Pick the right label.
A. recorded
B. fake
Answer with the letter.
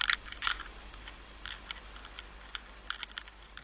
A